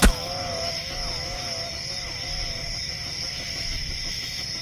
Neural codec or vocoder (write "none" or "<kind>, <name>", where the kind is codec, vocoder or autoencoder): none